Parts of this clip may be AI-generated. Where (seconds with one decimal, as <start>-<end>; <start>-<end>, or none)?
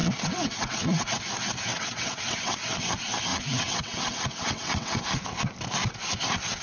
0.0-1.2; 1.7-2.9; 3.3-5.0